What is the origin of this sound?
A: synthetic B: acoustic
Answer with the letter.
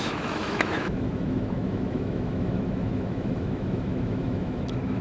A